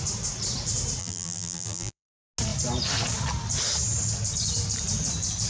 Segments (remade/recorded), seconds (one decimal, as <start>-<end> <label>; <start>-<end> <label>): 0.0-1.0 recorded; 1.0-2.1 remade; 2.1-5.5 recorded